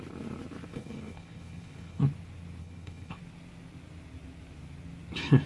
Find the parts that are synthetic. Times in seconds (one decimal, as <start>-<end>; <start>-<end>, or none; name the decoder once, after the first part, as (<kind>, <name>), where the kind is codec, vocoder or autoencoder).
0.7-2.0 (codec, HILCodec); 2.6-3.2